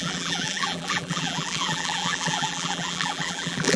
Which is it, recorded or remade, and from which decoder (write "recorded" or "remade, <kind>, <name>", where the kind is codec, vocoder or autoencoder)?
remade, vocoder, BigVGAN v2